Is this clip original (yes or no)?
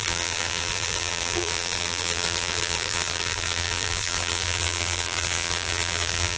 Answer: no